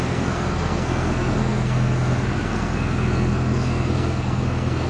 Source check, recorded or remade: remade